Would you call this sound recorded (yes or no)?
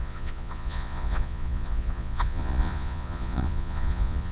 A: no